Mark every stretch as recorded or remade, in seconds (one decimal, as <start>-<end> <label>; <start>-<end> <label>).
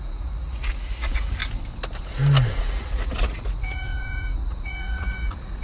0.0-1.4 remade; 1.4-2.6 recorded; 2.6-5.6 remade